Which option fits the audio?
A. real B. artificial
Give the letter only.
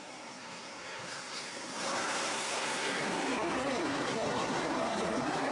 B